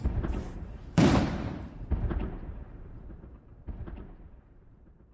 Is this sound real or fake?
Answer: fake